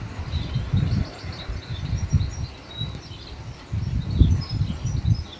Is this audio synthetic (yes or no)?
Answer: no